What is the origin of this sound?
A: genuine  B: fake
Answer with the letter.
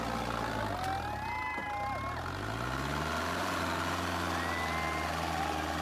A